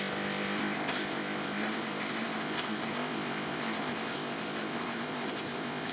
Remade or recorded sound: remade